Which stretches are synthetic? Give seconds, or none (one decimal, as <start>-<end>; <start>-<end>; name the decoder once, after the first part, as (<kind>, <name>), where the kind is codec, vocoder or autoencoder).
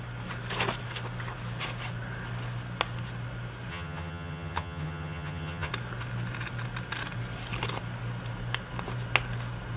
3.7-5.7 (vocoder, HiFi-GAN)